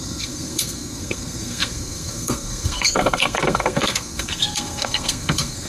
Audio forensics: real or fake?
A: fake